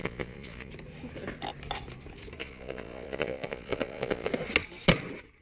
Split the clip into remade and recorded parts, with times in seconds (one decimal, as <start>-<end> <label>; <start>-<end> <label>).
0.0-0.7 remade; 0.7-2.4 recorded; 2.4-4.3 remade; 4.3-5.4 recorded